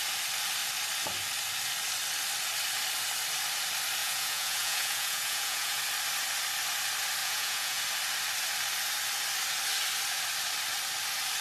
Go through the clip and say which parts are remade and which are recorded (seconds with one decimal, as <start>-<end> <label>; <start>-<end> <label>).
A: 0.0-4.0 recorded; 4.0-5.8 remade; 5.8-7.2 recorded; 7.2-7.8 remade; 7.8-11.4 recorded